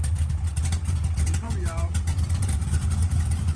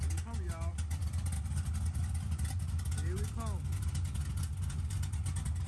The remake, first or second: first